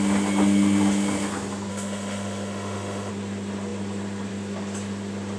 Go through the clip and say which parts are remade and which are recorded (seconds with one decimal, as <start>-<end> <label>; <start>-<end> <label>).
0.0-1.7 recorded; 1.7-3.1 remade; 3.1-5.4 recorded